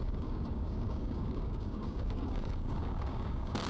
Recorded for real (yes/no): no